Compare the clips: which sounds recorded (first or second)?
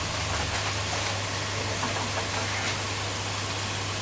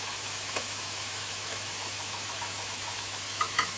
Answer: first